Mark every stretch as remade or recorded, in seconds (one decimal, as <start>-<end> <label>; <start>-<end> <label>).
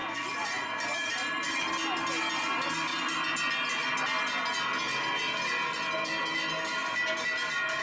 0.0-1.7 remade; 1.7-7.8 recorded